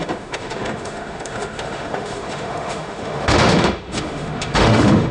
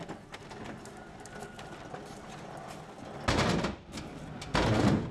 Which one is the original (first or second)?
second